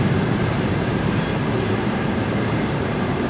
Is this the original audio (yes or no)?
no